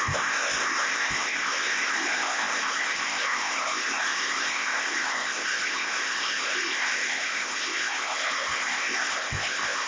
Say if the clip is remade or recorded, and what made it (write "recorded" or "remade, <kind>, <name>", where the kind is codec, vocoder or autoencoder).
remade, codec, ZipCodec